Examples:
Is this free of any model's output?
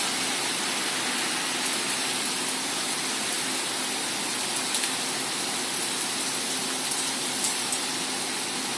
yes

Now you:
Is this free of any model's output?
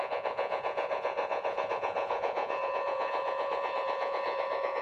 no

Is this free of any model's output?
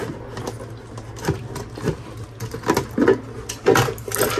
yes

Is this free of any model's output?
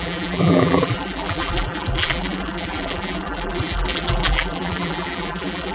no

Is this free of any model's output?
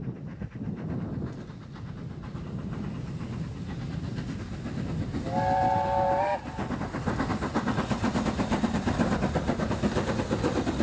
yes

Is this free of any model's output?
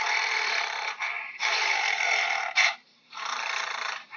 no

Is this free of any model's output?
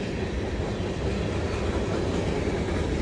yes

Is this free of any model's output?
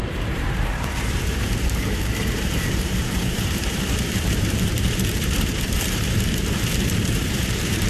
no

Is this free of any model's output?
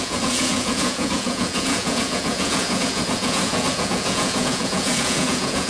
no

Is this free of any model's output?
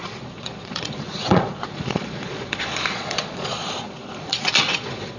no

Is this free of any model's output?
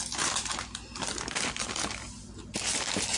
yes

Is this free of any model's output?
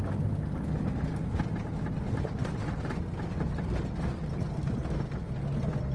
yes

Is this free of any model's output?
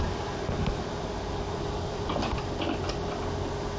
yes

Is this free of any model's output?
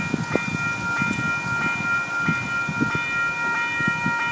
yes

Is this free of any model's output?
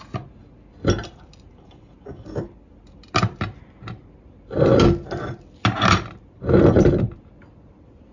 yes